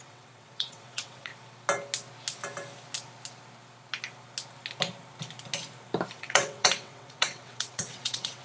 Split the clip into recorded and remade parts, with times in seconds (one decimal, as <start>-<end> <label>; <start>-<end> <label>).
0.0-1.3 remade; 1.3-6.2 recorded; 6.2-8.4 remade